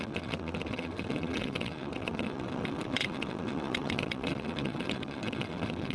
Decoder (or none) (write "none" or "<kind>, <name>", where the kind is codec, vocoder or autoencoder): vocoder, WaveNeXt